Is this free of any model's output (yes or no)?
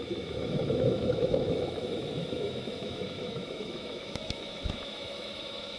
no